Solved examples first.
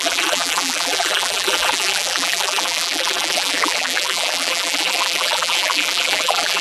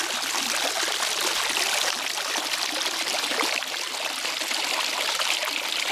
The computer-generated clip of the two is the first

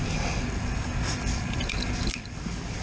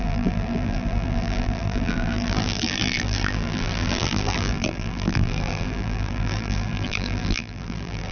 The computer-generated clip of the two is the second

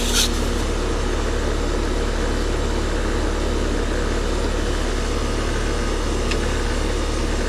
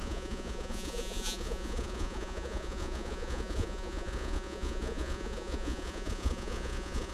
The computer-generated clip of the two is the second